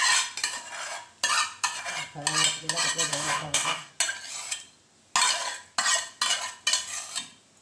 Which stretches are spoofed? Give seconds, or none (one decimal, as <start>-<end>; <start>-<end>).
3.1-3.9